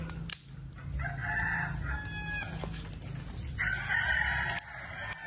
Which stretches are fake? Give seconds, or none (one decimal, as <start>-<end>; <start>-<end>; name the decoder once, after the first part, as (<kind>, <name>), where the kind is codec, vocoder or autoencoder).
none